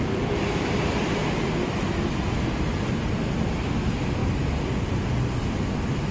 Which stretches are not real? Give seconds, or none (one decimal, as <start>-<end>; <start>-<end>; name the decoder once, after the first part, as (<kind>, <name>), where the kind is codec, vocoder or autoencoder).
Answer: none